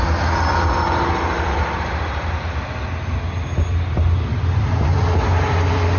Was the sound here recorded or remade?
recorded